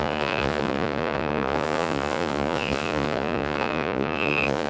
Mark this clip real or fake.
fake